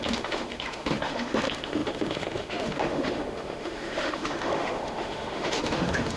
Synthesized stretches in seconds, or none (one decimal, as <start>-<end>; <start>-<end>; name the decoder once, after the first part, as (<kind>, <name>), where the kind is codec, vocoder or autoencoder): 0.0-6.2 (autoencoder, DAC-VAE)